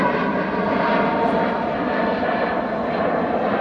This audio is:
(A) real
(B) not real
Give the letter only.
A